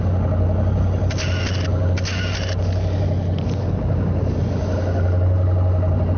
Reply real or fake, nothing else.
real